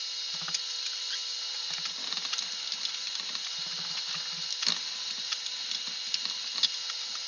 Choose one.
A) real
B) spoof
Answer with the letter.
A